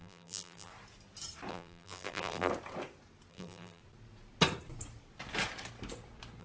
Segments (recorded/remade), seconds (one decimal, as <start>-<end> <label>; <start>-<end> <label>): 0.0-0.7 remade; 0.7-1.5 recorded; 1.5-2.5 remade; 2.5-3.3 recorded; 3.3-3.8 remade; 3.8-6.4 recorded